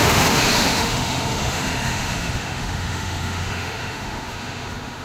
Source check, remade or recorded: remade